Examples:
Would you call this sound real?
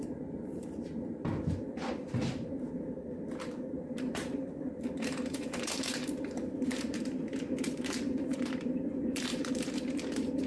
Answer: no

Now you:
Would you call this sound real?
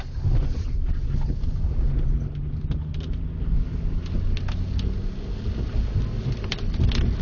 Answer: yes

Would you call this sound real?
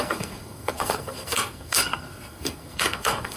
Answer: no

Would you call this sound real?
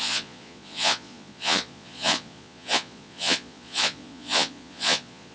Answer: no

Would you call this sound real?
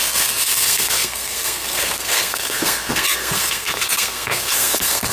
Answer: no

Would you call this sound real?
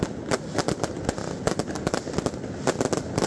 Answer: yes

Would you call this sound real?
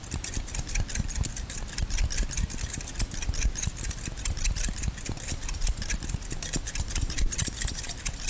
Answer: yes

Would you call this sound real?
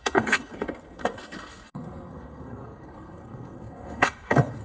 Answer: no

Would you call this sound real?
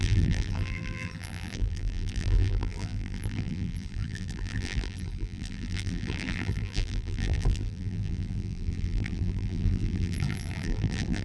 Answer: no